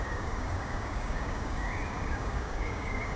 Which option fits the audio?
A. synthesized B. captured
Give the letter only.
A